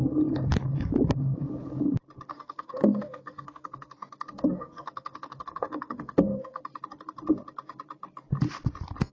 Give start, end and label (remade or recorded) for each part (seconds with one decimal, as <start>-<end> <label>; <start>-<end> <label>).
0.0-2.3 recorded; 2.3-6.6 remade; 6.6-9.1 recorded